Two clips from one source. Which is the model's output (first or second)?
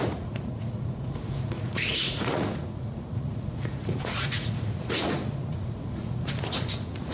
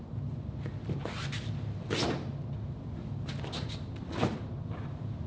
first